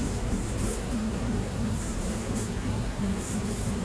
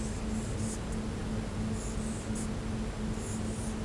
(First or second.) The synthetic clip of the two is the first